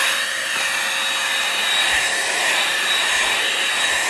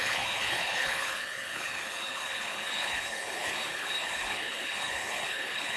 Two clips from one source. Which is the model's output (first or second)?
second